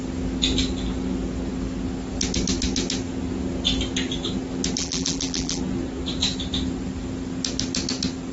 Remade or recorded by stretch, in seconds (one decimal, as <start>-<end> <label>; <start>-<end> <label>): 0.0-4.8 recorded; 4.8-5.6 remade; 5.6-8.3 recorded